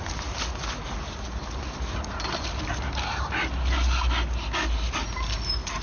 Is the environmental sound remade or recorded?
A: recorded